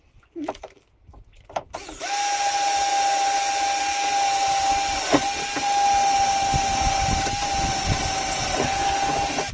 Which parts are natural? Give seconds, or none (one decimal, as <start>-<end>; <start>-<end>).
0.0-9.5